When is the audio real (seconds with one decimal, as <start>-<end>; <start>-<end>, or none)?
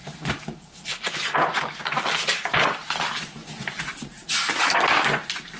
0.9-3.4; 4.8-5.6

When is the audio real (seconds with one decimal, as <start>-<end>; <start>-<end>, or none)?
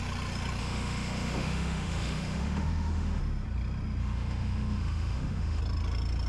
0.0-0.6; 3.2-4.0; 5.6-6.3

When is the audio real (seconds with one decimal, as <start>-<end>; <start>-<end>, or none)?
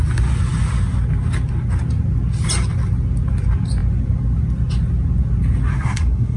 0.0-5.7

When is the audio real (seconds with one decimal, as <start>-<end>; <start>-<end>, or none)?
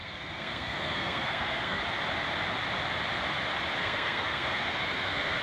1.8-3.8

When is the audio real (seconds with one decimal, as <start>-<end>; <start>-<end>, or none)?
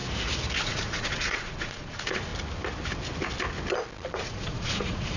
0.0-0.6; 2.3-4.2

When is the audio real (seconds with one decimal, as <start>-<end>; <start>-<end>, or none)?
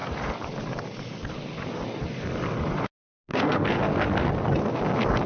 0.0-3.3; 3.8-5.3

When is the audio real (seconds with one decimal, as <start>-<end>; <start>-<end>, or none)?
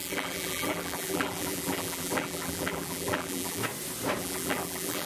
3.6-4.2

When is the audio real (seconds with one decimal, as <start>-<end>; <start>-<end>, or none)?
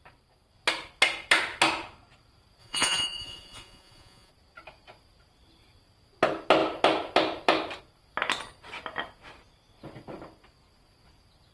0.0-2.6; 4.3-11.5